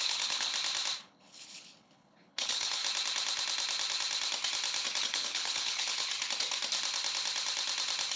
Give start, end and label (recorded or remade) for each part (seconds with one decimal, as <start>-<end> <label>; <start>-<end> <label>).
0.0-0.5 remade; 0.5-1.0 recorded; 1.0-2.8 remade; 2.8-5.0 recorded; 5.0-6.1 remade; 6.1-8.2 recorded